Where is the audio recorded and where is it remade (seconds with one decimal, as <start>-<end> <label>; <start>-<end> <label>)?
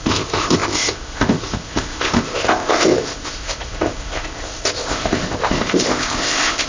0.0-6.7 remade